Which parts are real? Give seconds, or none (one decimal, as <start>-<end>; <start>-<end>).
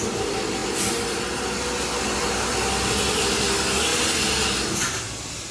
0.0-5.5